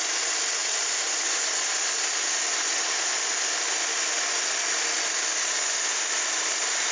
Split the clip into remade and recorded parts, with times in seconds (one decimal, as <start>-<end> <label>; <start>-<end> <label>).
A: 0.0-0.6 recorded; 0.6-1.4 remade; 1.4-6.9 recorded